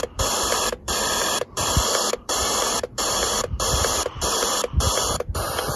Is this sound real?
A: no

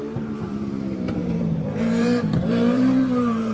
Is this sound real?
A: no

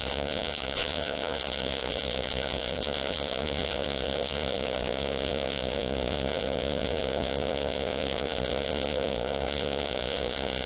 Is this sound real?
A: no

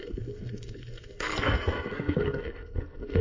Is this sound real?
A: no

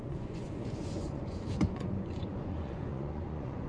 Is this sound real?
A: no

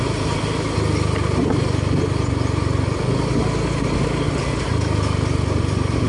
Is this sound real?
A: yes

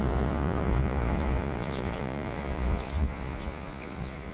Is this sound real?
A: no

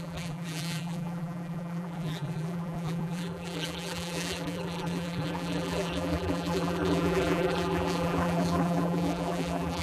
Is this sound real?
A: no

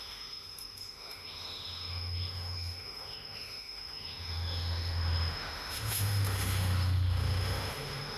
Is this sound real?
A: no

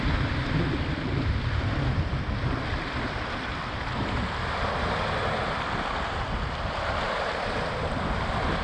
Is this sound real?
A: yes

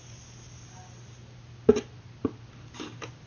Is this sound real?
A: yes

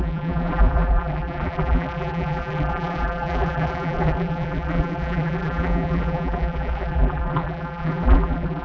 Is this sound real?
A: no